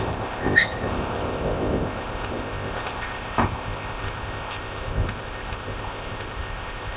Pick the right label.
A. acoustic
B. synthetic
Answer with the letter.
B